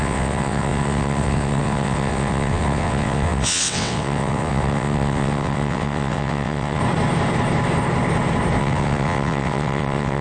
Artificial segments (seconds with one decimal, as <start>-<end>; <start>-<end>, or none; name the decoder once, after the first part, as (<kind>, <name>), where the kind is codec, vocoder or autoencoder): 0.0-6.8 (vocoder, WaveNeXt); 8.6-10.2